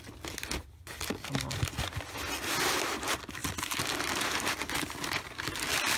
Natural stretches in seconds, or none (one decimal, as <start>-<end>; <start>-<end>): 0.0-6.0